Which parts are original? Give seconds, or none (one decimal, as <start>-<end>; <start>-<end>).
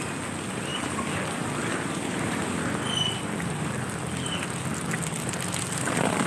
0.0-6.3